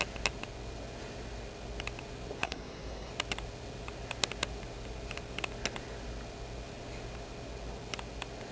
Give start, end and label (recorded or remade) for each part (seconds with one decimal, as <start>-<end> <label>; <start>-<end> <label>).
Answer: 0.0-2.4 recorded; 2.4-3.1 remade; 3.1-8.5 recorded